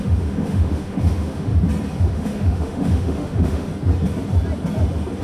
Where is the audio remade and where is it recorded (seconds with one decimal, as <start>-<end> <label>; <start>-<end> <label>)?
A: 0.0-1.5 remade; 1.5-2.1 recorded; 2.1-3.7 remade; 3.7-5.2 recorded